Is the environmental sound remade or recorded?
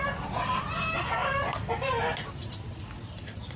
recorded